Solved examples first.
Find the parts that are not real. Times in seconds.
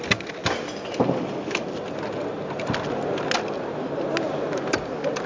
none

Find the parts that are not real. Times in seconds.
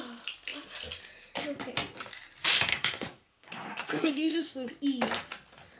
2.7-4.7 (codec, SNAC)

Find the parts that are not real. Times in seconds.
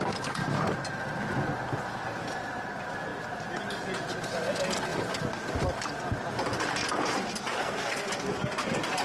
7.5-8.1 (codec, SNAC)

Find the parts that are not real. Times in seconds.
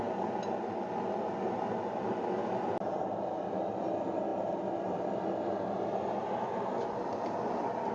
none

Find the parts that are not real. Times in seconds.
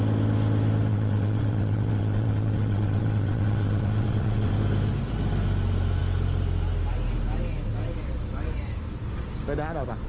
0.9-4.5 (vocoder, WaveNeXt)